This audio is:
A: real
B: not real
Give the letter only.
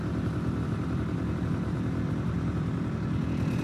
A